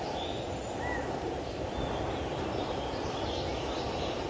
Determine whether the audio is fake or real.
real